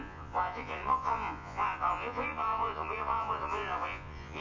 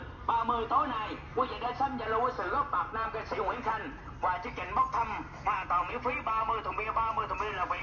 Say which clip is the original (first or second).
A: second